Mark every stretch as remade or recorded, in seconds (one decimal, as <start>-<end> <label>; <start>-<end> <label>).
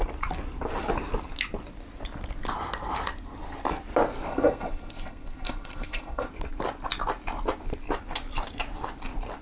0.0-4.3 recorded; 4.3-6.3 remade; 6.3-9.4 recorded